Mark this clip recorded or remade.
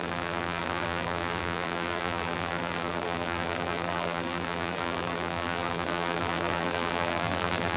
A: remade